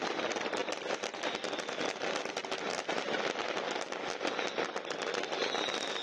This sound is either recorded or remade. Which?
recorded